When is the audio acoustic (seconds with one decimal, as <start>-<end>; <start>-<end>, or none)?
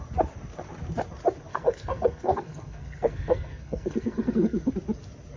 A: 0.0-1.5; 4.7-5.4